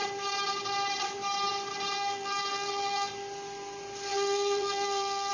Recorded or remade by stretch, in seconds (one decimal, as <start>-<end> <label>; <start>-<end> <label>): 0.0-1.9 recorded; 1.9-3.1 remade; 3.1-4.1 recorded; 4.1-5.3 remade